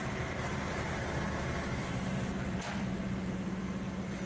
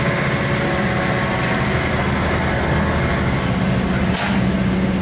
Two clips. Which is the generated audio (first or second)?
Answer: first